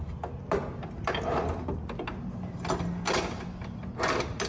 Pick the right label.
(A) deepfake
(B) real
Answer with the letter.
B